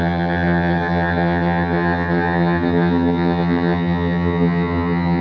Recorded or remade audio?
remade